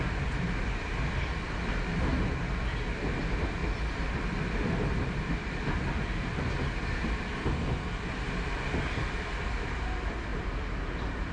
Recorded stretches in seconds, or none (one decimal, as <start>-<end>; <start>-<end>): 0.0-3.6; 5.6-11.3